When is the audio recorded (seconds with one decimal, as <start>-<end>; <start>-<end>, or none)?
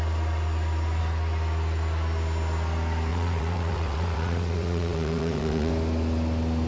0.0-3.1; 5.7-6.7